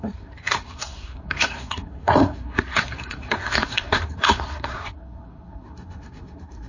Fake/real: fake